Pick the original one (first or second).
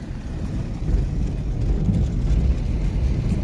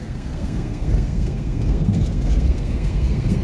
first